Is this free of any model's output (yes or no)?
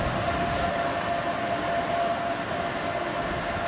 yes